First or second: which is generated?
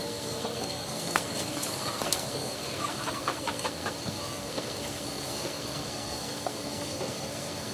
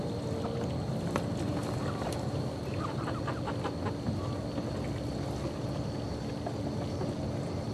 first